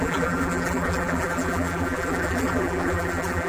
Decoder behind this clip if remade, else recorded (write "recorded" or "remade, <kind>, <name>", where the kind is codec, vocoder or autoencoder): remade, vocoder, BigVGAN v2